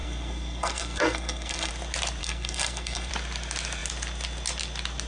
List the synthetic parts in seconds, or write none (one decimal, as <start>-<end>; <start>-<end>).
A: 0.0-1.7; 2.2-3.1